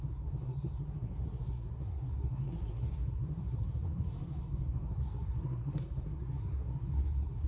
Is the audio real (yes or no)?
no